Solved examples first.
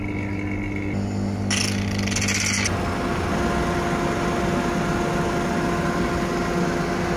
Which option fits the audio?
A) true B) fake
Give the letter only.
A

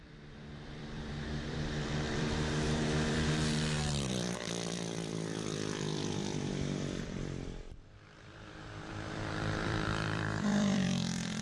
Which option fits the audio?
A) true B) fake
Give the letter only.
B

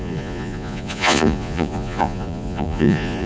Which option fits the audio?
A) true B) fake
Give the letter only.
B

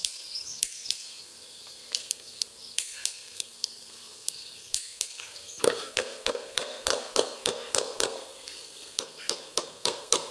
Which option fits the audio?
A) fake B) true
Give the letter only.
A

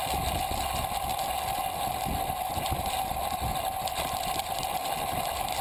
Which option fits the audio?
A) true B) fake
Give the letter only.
A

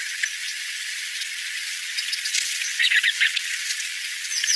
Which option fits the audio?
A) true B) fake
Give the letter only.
B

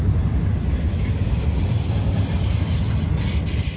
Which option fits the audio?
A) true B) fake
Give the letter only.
A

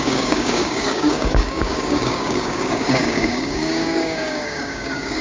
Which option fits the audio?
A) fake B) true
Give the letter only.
A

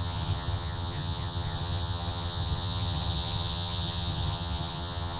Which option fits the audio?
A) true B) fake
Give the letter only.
B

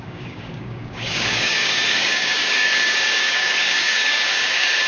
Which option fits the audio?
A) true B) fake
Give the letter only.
B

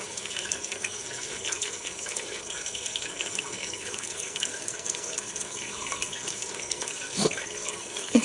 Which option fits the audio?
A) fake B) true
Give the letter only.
A